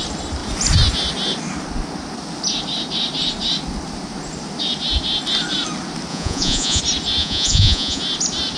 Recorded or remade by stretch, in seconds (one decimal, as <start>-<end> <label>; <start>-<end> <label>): 0.0-6.1 recorded; 6.1-6.8 remade; 6.8-7.2 recorded; 7.2-8.0 remade; 8.0-8.6 recorded